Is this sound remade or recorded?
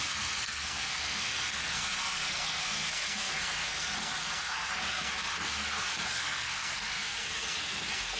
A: remade